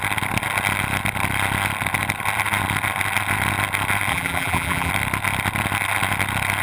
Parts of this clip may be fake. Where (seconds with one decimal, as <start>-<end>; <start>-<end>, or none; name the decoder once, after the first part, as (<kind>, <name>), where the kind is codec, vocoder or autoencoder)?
4.1-4.9 (vocoder, BigVGAN v2)